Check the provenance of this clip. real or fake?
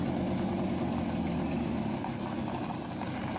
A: real